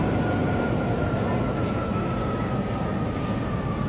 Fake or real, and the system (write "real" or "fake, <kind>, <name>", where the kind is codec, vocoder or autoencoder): real